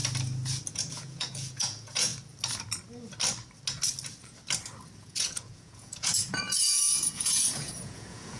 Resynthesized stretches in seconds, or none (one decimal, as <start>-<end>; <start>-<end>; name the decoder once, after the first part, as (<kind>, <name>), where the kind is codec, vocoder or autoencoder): 0.7-2.1 (vocoder, Vocos); 5.0-8.4